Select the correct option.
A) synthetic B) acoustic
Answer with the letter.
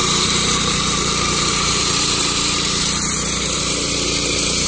A